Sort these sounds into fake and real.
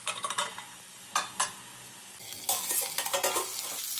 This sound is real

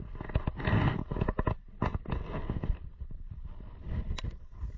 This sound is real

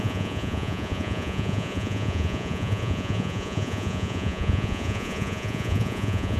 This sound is fake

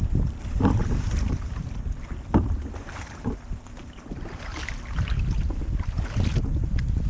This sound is real